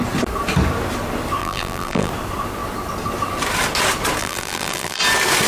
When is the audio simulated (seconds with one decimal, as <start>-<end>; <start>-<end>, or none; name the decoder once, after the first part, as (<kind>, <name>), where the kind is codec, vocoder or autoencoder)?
1.4-2.1 (vocoder, BigVGAN v2); 4.2-5.0